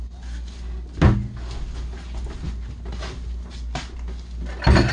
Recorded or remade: recorded